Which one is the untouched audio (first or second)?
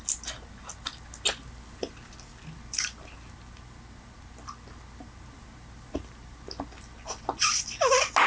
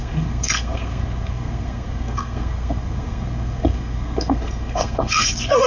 first